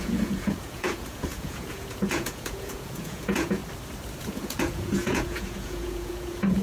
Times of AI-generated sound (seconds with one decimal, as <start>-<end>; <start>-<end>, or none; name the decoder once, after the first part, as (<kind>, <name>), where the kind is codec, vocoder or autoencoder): 0.0-3.6 (vocoder, Vocos); 4.2-6.6